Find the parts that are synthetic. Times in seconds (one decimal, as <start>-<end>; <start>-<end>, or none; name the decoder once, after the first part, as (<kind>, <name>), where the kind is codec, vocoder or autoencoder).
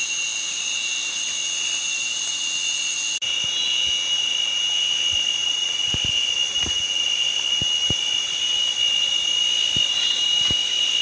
none